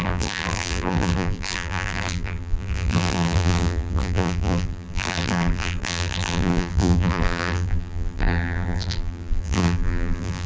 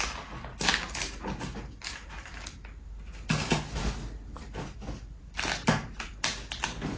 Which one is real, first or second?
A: second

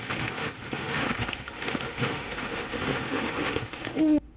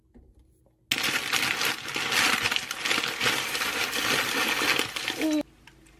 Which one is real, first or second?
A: second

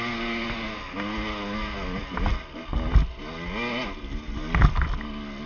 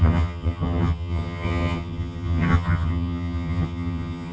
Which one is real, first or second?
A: first